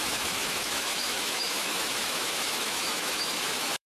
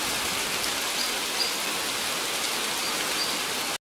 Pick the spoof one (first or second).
first